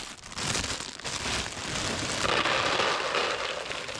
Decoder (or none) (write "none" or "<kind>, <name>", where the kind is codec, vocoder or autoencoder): none